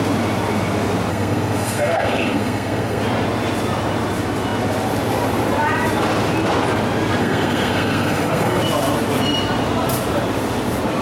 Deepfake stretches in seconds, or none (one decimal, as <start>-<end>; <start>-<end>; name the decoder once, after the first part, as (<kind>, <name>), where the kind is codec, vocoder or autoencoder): 1.1-3.0 (codec, SNAC); 7.2-8.6